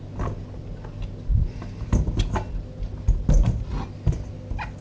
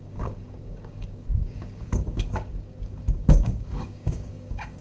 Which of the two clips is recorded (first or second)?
first